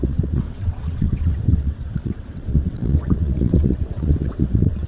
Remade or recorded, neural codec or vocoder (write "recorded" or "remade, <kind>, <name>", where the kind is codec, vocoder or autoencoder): remade, vocoder, WaveNeXt